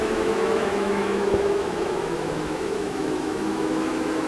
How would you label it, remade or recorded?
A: remade